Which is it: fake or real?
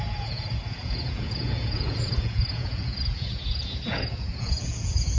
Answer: fake